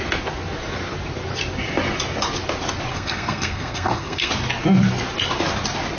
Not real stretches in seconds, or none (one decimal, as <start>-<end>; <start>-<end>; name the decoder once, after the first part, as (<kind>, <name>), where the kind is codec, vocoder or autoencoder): 2.9-4.3 (codec, SNAC)